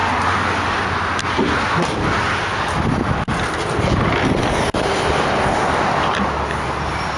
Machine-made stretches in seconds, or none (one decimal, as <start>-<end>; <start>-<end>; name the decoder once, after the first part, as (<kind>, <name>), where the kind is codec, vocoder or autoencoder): none